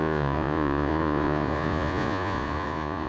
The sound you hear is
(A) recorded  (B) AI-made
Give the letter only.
B